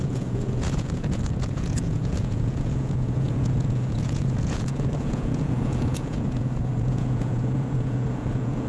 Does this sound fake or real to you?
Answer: fake